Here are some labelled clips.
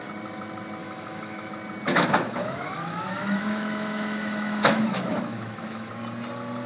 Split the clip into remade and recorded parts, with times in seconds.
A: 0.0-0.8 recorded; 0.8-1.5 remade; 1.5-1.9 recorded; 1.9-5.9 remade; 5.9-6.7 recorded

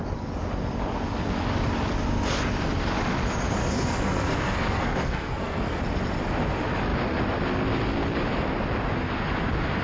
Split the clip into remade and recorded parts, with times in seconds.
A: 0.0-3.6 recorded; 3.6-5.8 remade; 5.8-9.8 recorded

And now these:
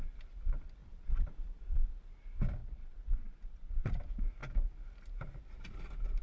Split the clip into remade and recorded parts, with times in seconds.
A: 0.0-0.8 recorded; 0.8-1.9 remade; 1.9-2.6 recorded; 2.6-4.0 remade; 4.0-6.2 recorded